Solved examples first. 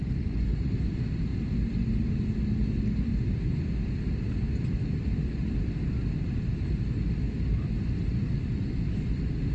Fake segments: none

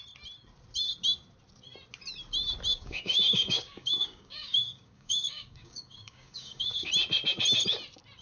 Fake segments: 2.7-6.9 (codec, DAC)

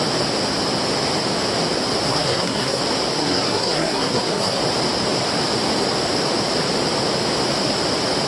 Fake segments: 2.1-2.8 (codec, SNAC); 3.2-4.6

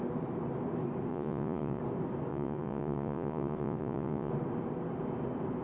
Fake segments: 1.1-1.8 (vocoder, Vocos); 2.3-4.3

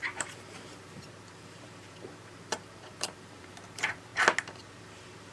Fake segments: 0.0-4.1 (vocoder, BigVGAN v2); 4.8-5.3

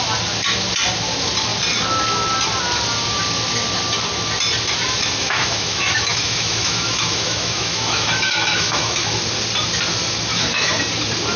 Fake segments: 5.2-9.1 (autoencoder, DAC-VAE); 10.3-10.8